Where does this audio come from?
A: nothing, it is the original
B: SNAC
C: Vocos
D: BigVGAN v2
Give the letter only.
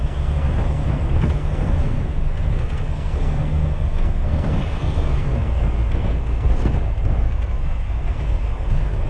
B